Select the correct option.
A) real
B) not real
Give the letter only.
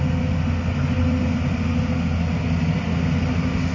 A